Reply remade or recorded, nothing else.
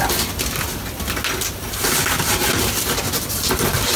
recorded